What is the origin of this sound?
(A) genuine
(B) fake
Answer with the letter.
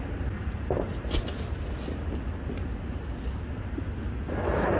A